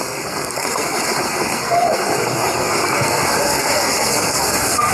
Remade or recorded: remade